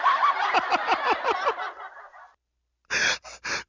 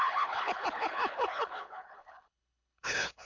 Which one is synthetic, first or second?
second